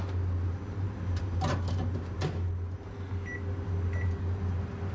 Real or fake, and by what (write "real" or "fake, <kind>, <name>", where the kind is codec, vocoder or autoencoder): real